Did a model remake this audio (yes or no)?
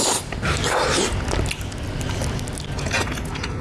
no